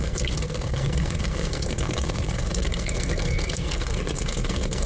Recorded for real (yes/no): no